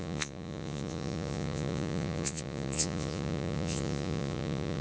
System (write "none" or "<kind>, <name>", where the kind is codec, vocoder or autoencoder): vocoder, Vocos